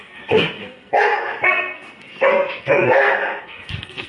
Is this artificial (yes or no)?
yes